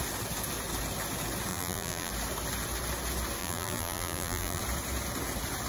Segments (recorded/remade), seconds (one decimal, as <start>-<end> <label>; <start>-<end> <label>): 0.0-1.5 recorded; 1.5-2.1 remade; 2.1-3.4 recorded; 3.4-4.6 remade; 4.6-5.7 recorded